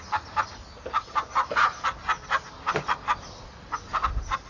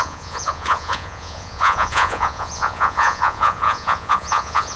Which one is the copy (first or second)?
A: second